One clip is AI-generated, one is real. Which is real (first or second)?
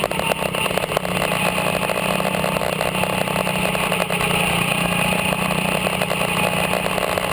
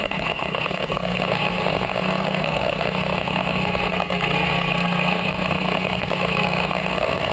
first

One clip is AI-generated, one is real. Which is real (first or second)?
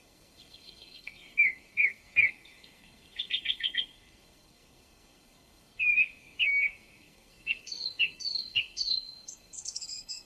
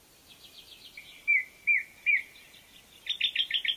second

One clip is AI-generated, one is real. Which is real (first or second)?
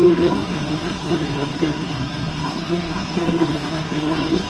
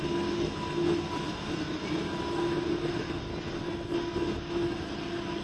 second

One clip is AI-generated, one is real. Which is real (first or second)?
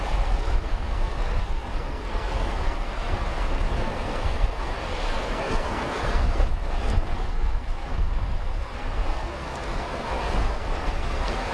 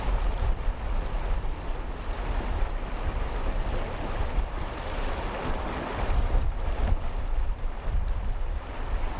second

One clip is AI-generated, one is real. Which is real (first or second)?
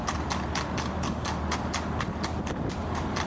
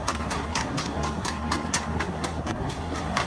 first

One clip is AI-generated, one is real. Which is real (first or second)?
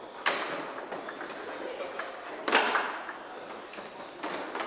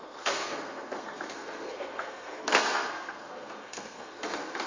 first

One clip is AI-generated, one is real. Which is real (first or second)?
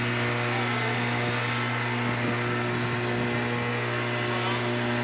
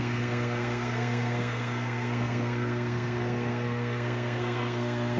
first